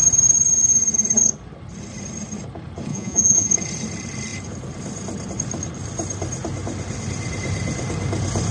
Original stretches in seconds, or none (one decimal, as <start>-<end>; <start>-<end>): 0.0-2.9; 3.5-8.5